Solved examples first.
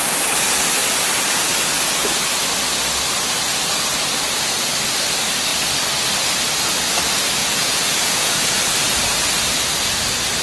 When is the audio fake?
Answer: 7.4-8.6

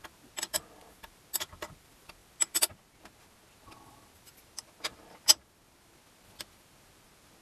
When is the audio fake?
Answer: none

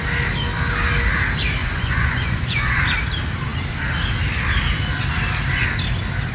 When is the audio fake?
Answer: 1.6-2.8

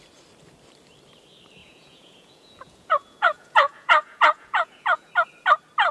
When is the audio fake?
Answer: 1.6-5.1

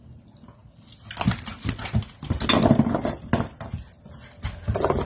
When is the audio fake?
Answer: none

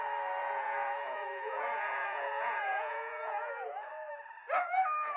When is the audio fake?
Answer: 0.4-3.5